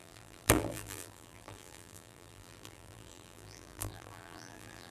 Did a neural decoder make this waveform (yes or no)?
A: yes